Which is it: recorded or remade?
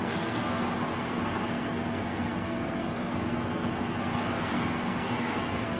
remade